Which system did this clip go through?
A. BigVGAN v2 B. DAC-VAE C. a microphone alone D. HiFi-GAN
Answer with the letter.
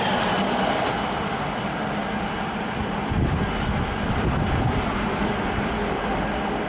C